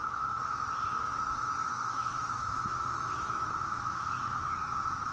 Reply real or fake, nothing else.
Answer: fake